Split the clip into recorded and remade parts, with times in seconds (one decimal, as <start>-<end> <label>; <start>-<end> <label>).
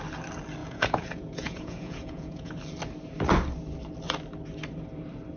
0.0-0.6 recorded; 0.6-2.5 remade; 2.5-5.4 recorded